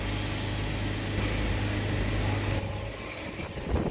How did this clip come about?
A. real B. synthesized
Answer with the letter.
A